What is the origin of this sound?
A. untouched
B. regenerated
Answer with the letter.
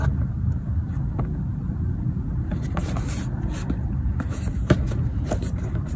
B